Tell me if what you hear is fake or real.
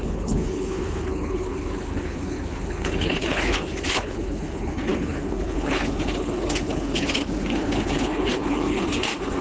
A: fake